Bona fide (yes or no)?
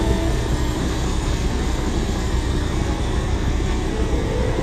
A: no